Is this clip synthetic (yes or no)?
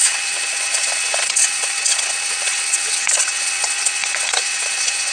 yes